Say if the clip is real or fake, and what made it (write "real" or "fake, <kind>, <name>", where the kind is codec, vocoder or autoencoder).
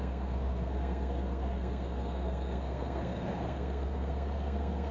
fake, codec, SNAC